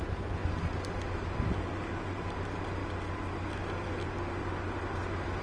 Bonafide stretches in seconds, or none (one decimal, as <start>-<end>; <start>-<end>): 0.4-1.6; 2.8-4.3